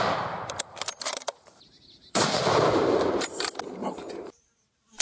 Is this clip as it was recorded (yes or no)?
no